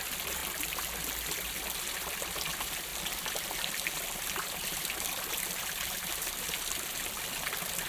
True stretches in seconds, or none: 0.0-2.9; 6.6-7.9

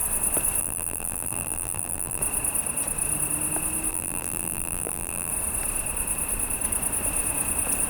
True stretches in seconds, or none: 0.0-0.6; 2.2-3.9; 5.3-7.9

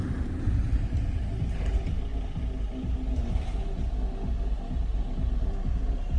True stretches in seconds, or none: 0.0-6.2